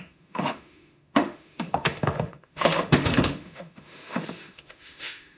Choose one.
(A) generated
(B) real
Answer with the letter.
A